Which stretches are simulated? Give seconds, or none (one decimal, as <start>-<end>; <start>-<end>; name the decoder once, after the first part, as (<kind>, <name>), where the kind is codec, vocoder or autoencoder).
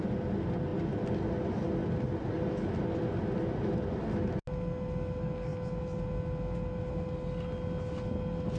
none